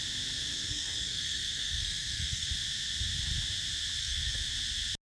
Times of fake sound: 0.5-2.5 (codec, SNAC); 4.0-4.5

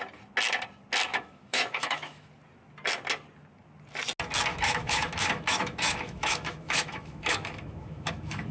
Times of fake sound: 1.1-2.3 (autoencoder, DAC-VAE); 4.5-8.5

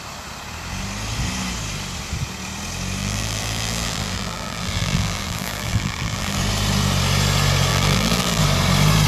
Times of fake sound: 3.0-6.4 (vocoder, BigVGAN v2); 7.7-8.4